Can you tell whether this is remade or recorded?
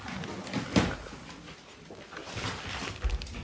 recorded